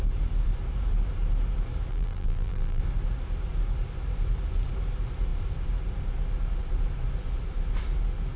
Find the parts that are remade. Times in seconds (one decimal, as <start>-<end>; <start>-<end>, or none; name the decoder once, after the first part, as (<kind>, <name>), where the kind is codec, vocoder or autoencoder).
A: 1.9-2.8 (vocoder, BigVGAN v2)